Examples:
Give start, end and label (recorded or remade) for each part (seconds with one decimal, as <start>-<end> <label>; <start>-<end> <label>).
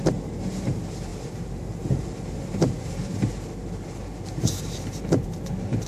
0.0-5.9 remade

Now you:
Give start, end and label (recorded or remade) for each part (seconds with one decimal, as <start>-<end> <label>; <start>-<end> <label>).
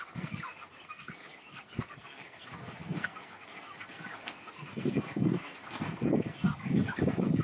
0.0-7.4 remade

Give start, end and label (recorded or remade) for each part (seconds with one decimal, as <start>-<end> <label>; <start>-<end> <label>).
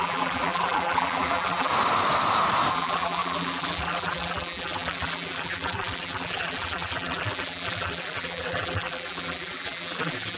0.0-1.7 remade; 1.7-2.7 recorded; 2.7-10.4 remade